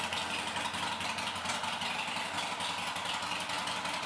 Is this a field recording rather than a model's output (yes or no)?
yes